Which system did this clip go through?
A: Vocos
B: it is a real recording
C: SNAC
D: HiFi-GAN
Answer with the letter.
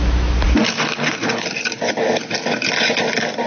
B